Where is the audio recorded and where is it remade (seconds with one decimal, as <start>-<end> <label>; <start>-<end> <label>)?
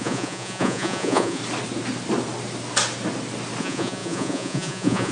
0.0-1.4 remade; 1.4-3.6 recorded; 3.6-5.1 remade